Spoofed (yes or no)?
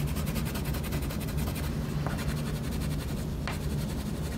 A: no